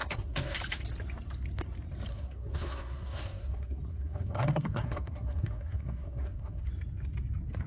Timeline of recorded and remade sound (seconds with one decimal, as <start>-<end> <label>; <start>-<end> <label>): 0.0-0.6 remade; 0.6-2.1 recorded; 2.1-6.7 remade; 6.7-7.7 recorded